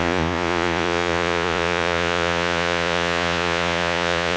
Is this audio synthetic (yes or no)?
yes